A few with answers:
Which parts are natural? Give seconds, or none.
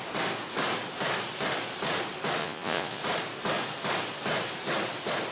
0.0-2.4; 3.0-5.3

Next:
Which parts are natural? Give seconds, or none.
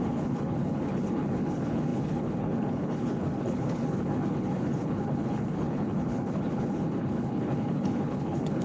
none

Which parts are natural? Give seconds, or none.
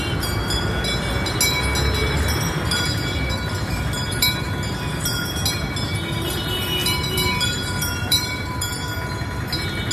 0.0-2.0; 4.5-6.8; 8.7-9.9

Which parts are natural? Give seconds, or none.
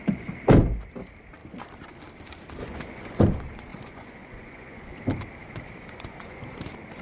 0.0-2.6; 3.2-3.7; 4.9-5.8; 6.4-7.0